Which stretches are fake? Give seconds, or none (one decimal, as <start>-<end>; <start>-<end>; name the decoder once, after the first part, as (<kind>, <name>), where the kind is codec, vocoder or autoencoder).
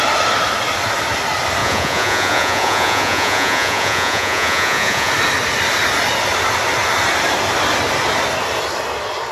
1.6-5.1 (vocoder, Vocos)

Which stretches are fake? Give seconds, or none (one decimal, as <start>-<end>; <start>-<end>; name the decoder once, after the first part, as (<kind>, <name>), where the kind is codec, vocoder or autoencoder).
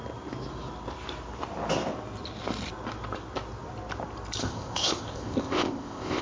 4.4-6.2 (codec, ZipCodec)